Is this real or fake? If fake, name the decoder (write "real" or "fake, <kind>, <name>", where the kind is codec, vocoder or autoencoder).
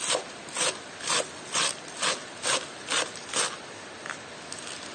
real